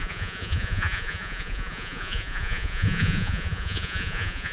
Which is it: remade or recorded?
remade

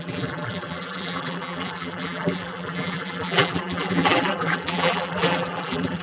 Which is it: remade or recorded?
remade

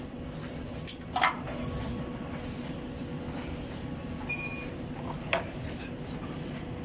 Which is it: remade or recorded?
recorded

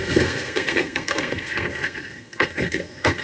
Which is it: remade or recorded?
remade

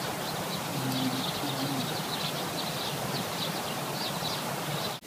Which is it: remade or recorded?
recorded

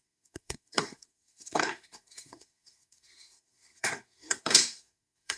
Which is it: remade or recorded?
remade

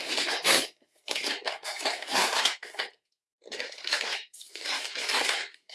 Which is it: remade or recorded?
remade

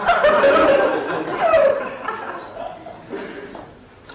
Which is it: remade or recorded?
recorded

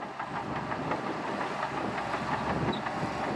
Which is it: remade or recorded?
recorded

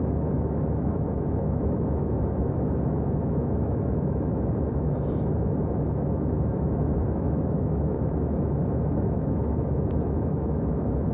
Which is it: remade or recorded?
remade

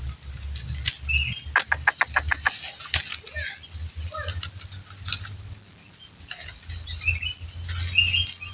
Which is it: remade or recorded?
recorded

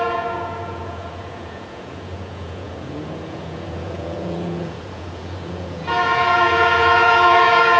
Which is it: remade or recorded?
remade